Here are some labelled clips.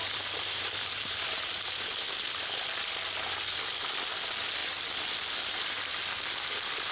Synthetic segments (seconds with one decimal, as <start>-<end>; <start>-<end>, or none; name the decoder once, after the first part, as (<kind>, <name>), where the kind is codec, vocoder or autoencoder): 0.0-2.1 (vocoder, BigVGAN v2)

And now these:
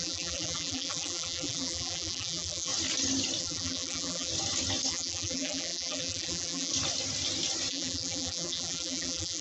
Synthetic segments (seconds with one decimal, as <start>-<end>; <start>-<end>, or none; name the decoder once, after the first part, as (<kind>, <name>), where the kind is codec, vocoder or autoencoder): 0.0-2.7 (vocoder, BigVGAN v2); 3.4-4.3; 4.9-6.7; 7.7-9.4

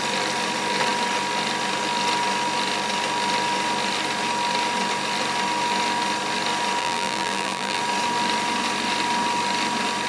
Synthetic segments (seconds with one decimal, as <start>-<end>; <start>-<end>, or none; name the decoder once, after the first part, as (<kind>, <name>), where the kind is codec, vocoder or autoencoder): 6.8-7.8 (vocoder, BigVGAN v2)

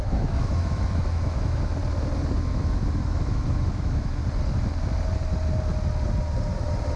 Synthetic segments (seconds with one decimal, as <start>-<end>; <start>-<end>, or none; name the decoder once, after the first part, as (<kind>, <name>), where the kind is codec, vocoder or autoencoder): 0.0-1.8 (autoencoder, DAC-VAE); 2.4-4.2